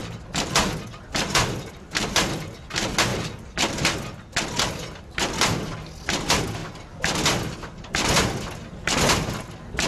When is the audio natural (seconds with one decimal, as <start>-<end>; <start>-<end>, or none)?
0.0-9.9